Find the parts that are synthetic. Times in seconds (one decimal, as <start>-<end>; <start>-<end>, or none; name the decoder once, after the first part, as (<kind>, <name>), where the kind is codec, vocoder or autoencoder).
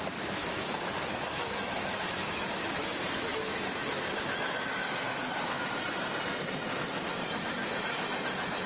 0.4-2.5 (autoencoder, DAC-VAE); 3.3-5.7